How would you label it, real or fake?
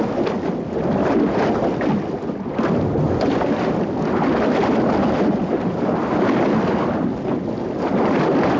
real